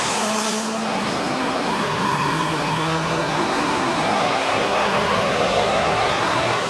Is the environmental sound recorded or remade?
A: remade